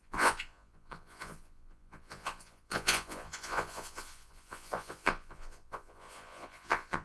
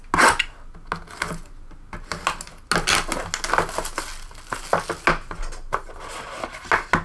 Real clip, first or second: second